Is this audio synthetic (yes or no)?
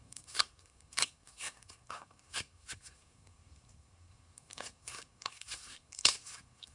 yes